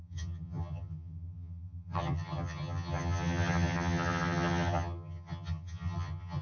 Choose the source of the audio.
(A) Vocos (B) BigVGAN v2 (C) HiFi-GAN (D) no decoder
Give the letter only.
C